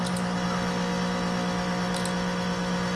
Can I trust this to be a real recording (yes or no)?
yes